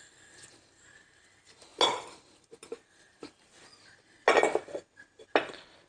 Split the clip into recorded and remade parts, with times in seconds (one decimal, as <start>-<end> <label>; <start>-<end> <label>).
0.0-5.9 recorded